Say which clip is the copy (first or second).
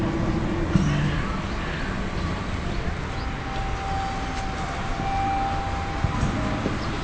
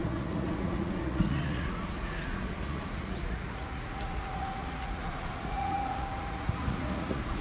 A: second